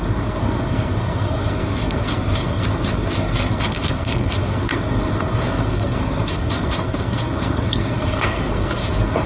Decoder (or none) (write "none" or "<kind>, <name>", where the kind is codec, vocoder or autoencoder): codec, SNAC